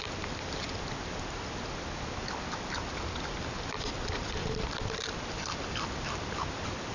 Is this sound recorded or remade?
recorded